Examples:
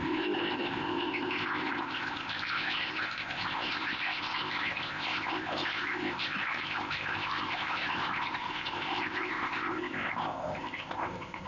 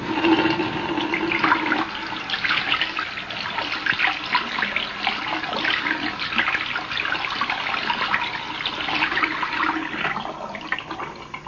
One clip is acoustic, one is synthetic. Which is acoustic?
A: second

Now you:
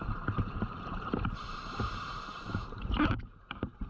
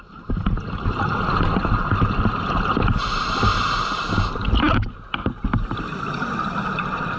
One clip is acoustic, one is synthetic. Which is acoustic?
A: second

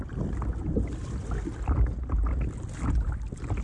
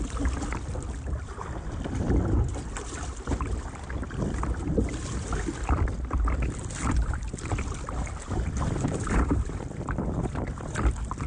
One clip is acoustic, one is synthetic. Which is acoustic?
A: first